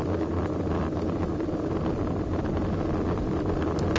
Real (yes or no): yes